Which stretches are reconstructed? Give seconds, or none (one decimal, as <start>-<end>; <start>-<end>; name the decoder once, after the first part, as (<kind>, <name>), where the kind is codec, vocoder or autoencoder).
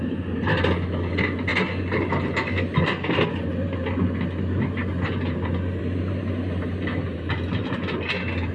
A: none